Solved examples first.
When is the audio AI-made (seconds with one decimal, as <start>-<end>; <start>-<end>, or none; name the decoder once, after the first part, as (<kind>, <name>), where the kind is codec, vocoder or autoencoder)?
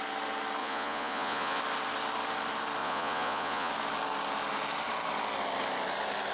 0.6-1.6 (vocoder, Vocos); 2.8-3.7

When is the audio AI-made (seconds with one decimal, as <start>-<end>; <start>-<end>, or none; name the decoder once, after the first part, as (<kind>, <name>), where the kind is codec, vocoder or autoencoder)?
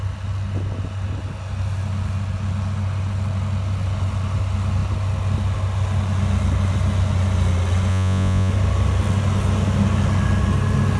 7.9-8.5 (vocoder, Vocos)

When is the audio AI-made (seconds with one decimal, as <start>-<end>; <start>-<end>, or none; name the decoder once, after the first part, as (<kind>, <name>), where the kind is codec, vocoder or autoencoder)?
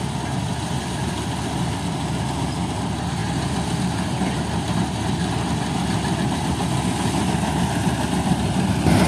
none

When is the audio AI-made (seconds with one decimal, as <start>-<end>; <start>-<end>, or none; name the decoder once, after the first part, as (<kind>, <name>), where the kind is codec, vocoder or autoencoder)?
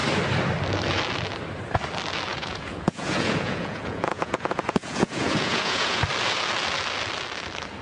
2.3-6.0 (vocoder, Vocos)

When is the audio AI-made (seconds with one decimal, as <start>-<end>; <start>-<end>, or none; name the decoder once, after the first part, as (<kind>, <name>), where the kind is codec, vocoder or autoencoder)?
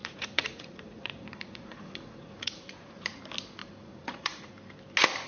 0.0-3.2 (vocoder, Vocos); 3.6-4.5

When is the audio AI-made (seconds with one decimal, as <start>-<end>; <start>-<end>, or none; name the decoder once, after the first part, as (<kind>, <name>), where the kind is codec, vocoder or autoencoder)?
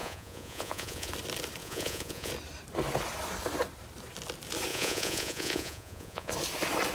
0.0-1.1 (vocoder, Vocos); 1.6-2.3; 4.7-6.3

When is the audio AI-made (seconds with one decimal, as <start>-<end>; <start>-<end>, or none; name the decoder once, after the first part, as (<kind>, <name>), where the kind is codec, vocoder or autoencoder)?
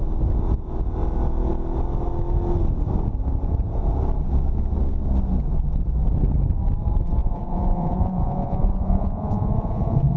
7.2-10.2 (vocoder, Vocos)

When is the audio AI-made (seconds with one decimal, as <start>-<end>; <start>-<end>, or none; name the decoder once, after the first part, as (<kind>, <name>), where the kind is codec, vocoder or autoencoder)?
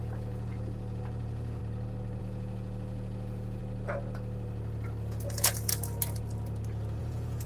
0.0-1.6 (vocoder, Vocos); 2.2-3.6; 7.0-7.5